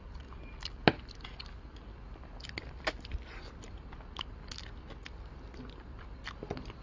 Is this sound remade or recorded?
recorded